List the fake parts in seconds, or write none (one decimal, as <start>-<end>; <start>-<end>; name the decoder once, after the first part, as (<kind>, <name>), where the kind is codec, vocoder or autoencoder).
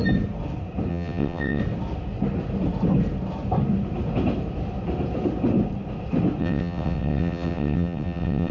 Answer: 0.9-1.6 (vocoder, WaveNeXt); 6.4-8.5